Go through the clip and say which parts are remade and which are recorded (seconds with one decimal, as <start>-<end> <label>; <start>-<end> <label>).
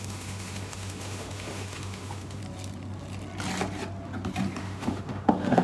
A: 0.0-2.4 remade; 2.4-4.6 recorded; 4.6-5.6 remade